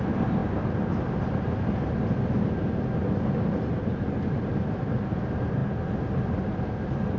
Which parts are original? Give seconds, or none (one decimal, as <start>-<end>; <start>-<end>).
0.0-7.2